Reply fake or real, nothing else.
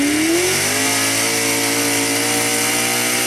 real